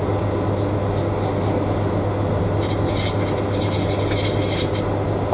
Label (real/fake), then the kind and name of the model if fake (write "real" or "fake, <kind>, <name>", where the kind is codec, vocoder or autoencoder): real